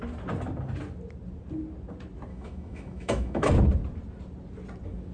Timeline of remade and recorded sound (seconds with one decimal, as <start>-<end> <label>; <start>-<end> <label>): 0.0-2.3 recorded; 2.3-3.5 remade; 3.5-5.1 recorded